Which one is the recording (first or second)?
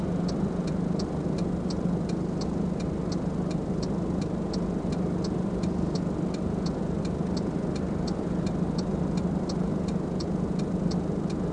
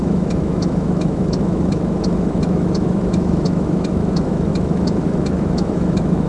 first